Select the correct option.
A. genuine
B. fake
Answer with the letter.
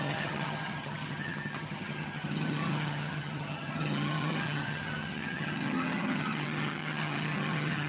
B